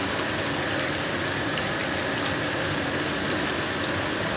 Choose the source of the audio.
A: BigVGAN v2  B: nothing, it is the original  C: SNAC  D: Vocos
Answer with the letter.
B